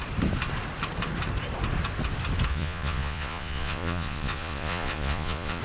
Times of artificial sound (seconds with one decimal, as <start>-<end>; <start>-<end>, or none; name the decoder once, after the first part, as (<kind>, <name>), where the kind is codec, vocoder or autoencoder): 2.5-5.6 (vocoder, Vocos)